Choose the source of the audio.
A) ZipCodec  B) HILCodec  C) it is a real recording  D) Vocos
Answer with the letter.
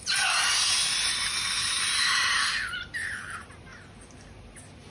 C